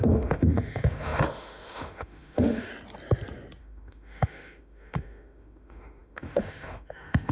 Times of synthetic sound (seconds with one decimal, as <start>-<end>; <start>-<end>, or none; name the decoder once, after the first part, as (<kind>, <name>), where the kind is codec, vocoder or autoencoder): 0.0-2.7 (autoencoder, DAC-VAE); 3.6-7.3